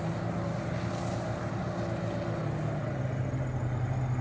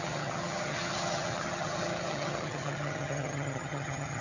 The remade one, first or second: second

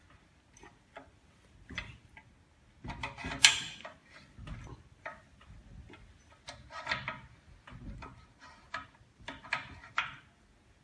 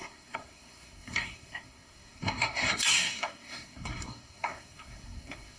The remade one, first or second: second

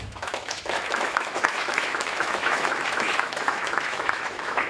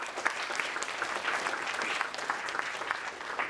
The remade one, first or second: first